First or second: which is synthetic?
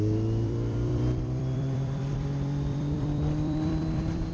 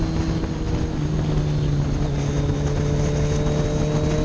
first